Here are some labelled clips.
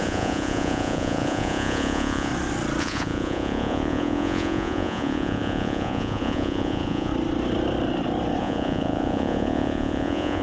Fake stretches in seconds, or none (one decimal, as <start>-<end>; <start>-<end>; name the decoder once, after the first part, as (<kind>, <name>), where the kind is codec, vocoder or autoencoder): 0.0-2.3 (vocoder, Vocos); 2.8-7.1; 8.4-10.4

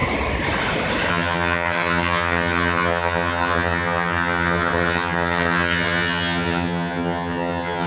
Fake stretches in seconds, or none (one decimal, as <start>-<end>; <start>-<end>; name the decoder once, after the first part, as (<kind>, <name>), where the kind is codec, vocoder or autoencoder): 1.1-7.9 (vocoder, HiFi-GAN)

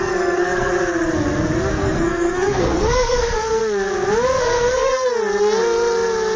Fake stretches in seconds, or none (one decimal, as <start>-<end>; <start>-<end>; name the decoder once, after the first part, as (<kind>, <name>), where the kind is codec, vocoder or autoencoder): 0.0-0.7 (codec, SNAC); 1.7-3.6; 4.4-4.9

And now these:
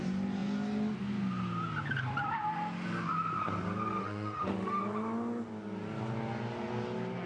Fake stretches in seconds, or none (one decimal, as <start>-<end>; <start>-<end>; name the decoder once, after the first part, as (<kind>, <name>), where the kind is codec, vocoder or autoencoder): 4.0-4.8 (autoencoder, DAC-VAE)

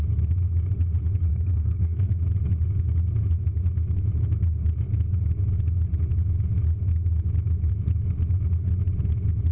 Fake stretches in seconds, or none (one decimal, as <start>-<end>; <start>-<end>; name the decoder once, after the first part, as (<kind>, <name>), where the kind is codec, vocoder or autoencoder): 1.3-2.1 (codec, SNAC)

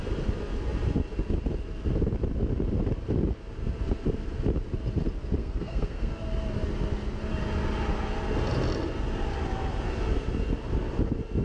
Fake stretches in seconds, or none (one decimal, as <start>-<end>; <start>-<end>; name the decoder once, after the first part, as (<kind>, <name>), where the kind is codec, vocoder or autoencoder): 5.4-6.1 (codec, SNAC)

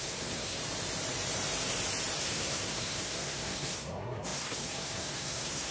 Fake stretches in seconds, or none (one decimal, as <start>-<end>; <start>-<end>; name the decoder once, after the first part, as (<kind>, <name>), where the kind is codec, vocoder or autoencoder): 0.0-0.6 (codec, SNAC); 2.2-5.7